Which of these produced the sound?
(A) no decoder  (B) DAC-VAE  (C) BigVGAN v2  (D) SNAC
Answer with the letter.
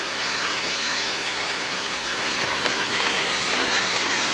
D